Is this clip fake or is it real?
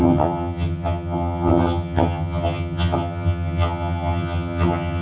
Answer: fake